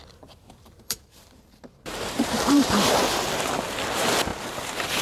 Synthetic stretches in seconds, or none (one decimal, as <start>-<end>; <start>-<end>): 0.0-3.0